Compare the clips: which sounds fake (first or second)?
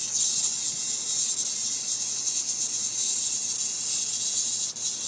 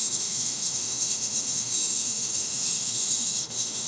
second